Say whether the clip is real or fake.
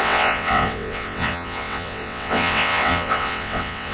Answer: fake